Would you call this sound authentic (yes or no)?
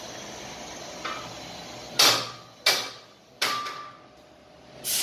yes